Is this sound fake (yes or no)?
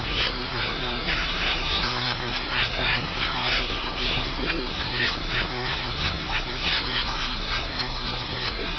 yes